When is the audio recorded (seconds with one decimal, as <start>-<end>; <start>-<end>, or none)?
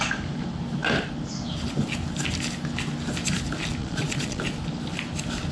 0.0-3.8; 4.4-5.5